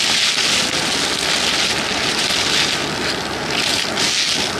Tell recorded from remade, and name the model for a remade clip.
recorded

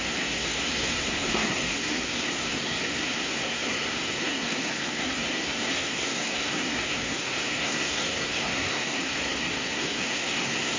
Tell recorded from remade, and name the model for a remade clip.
remade, codec, SNAC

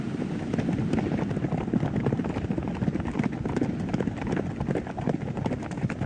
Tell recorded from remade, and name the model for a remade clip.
recorded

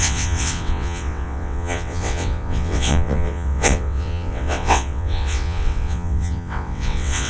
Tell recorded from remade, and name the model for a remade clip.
remade, vocoder, WaveNeXt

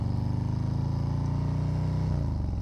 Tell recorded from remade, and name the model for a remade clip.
recorded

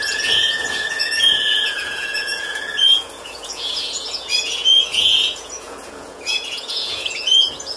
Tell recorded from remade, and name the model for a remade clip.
remade, vocoder, Vocos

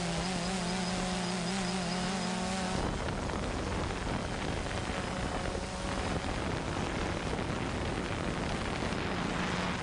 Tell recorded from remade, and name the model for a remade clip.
recorded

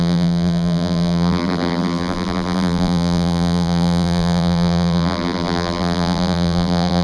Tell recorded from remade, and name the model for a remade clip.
remade, vocoder, BigVGAN v2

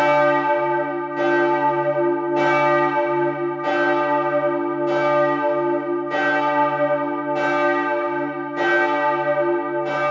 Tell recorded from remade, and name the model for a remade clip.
recorded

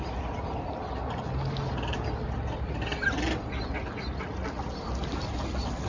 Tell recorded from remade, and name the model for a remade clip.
recorded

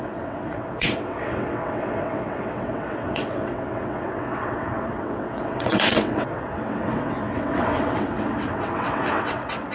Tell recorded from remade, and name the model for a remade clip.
remade, vocoder, WaveNeXt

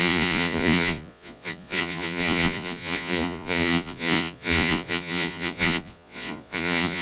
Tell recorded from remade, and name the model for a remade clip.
remade, vocoder, Vocos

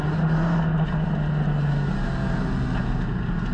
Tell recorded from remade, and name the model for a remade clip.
recorded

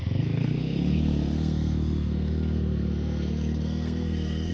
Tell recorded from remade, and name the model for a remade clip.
remade, codec, SNAC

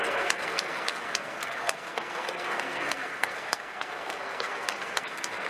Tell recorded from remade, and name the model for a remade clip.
remade, codec, SNAC